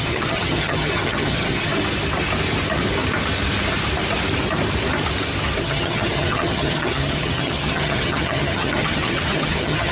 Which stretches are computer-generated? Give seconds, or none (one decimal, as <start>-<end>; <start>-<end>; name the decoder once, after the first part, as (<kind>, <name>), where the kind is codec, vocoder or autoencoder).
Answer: 0.0-1.7 (vocoder, HiFi-GAN); 5.6-9.9